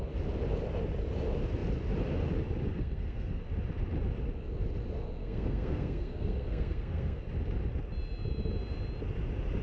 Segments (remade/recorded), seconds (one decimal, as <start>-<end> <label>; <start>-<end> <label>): 0.0-2.7 recorded; 2.7-3.4 remade; 3.4-5.2 recorded; 5.2-7.2 remade; 7.2-9.6 recorded